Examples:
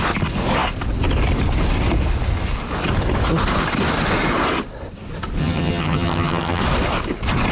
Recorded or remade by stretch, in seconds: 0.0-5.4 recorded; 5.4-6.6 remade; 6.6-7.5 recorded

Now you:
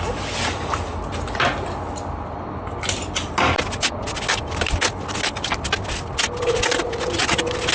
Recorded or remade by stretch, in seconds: 0.0-7.7 recorded

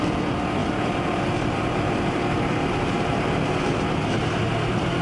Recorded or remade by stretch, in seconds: 0.0-5.0 recorded

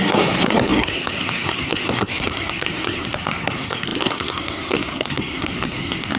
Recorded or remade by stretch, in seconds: 0.0-6.2 remade

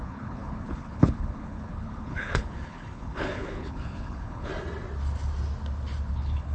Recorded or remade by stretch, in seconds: 0.0-4.5 remade; 4.5-6.1 recorded; 6.1-6.5 remade